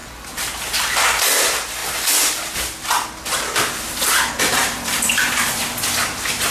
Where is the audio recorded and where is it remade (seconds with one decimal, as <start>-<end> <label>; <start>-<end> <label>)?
0.0-6.5 recorded